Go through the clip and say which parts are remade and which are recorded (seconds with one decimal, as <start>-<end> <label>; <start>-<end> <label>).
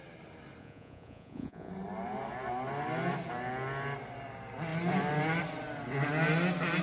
0.0-0.6 recorded; 0.6-1.7 remade; 1.7-6.8 recorded